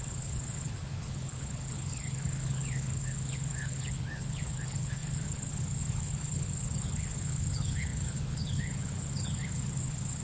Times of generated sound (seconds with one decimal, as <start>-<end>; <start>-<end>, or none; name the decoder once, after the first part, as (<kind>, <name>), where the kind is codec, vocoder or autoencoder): 0.0-10.2 (codec, HILCodec)